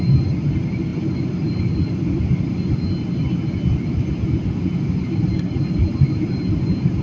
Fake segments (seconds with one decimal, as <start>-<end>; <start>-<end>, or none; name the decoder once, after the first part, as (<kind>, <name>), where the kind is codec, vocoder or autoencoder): none